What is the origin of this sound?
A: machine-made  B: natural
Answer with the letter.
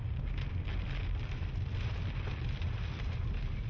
B